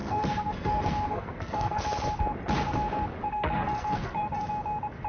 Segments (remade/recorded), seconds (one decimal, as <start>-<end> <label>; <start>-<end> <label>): 0.0-1.8 remade; 1.8-3.2 recorded; 3.2-4.5 remade; 4.5-5.1 recorded